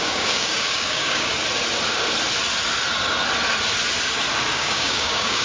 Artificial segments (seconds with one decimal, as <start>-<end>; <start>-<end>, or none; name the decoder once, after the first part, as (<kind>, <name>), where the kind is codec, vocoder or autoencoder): 0.0-1.3 (codec, DAC); 4.5-5.4